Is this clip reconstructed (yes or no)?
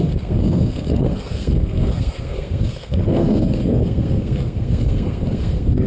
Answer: yes